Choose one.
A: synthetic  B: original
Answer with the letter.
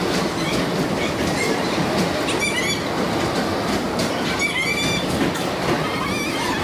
A